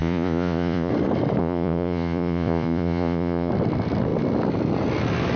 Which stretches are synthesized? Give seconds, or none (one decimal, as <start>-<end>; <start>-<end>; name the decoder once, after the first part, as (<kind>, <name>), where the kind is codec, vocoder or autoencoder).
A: 0.0-0.9 (vocoder, Vocos); 1.4-3.5